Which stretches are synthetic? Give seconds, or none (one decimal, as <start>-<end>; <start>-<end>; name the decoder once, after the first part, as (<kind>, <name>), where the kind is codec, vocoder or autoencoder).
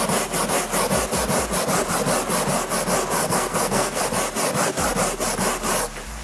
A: 3.2-4.0 (codec, SNAC)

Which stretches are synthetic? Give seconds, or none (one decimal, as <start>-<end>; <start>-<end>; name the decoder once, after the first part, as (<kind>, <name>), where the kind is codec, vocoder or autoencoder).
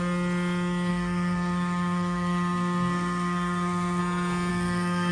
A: 0.9-4.0 (codec, SNAC); 4.5-5.1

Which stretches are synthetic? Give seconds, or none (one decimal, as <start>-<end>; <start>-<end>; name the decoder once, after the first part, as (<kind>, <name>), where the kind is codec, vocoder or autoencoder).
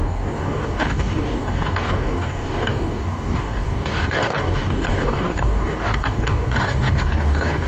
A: 0.0-7.7 (codec, DAC)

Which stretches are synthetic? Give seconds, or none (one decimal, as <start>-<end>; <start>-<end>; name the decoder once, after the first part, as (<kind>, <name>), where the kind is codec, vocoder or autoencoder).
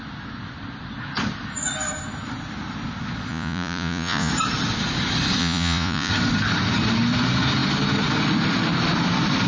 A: 3.3-4.3 (vocoder, Vocos); 5.4-6.1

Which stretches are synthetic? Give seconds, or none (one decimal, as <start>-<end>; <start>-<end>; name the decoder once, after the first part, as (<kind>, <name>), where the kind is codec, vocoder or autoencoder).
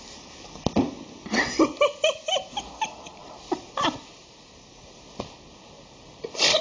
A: 3.2-3.8 (vocoder, BigVGAN v2); 4.2-6.1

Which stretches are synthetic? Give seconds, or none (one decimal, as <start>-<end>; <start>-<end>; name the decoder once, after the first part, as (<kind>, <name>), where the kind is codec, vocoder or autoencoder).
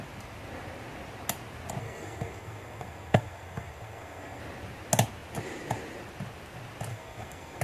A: 1.8-4.4 (codec, SNAC); 6.9-7.6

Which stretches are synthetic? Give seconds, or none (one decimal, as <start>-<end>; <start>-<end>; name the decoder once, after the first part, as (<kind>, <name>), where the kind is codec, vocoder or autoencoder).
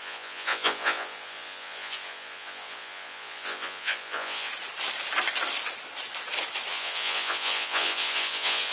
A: 0.0-4.5 (vocoder, Vocos); 6.7-8.7